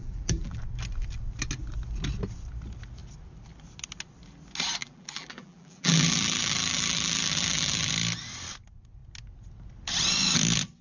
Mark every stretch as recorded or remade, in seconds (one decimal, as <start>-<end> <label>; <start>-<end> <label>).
0.0-0.6 remade; 0.6-4.8 recorded; 4.8-7.9 remade; 7.9-10.8 recorded